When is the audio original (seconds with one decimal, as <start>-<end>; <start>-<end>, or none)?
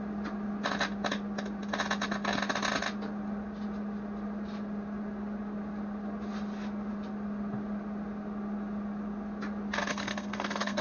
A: 0.0-9.9